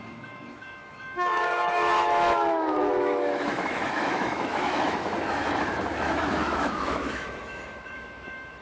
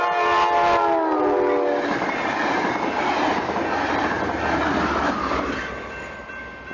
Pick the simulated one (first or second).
first